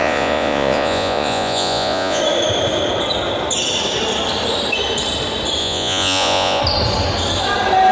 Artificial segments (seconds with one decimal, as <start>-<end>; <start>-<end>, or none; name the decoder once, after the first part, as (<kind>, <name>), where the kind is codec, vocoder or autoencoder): 0.0-2.2 (vocoder, Vocos); 5.6-6.6